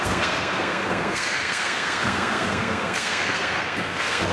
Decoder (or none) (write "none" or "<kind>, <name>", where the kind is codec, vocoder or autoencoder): codec, SNAC